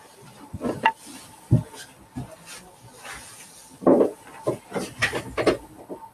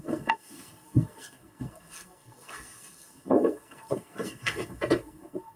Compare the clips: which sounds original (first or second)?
first